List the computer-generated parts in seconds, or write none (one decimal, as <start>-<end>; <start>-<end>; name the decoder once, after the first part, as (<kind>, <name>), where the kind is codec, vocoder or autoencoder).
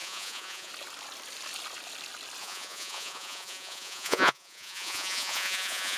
0.0-0.7 (vocoder, Vocos); 2.4-6.0